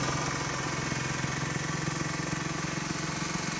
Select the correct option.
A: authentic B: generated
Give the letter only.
A